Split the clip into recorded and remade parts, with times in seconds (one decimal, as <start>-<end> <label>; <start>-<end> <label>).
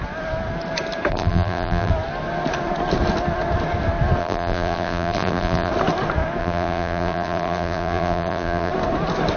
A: 0.0-1.1 recorded; 1.1-1.9 remade; 1.9-4.2 recorded; 4.2-5.7 remade; 5.7-6.4 recorded; 6.4-8.7 remade; 8.7-9.4 recorded